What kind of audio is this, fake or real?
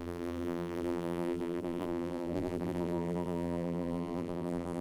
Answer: fake